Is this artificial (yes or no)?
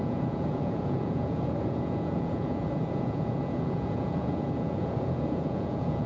yes